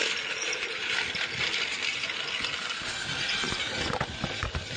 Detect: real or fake real